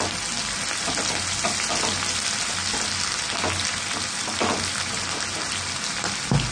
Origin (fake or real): real